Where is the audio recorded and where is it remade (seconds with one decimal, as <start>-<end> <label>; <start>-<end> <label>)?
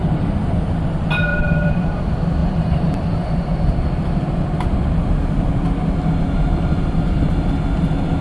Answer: 0.0-1.3 recorded; 1.3-2.0 remade; 2.0-2.4 recorded; 2.4-3.3 remade; 3.3-8.2 recorded